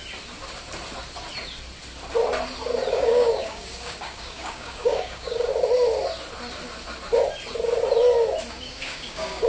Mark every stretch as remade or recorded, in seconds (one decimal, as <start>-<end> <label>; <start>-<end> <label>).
0.0-2.9 recorded; 2.9-5.5 remade; 5.5-8.5 recorded; 8.5-9.5 remade